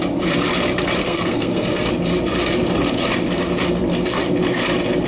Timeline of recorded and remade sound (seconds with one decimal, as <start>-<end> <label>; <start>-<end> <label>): 0.0-1.0 recorded; 1.0-1.9 remade; 1.9-5.1 recorded